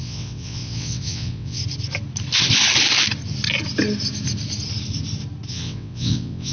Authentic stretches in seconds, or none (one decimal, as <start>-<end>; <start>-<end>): 1.6-5.5